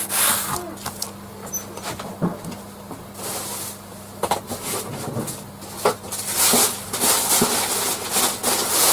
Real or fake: real